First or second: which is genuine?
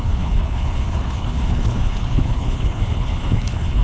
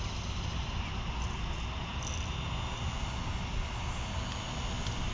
second